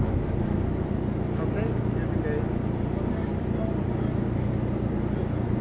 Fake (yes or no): no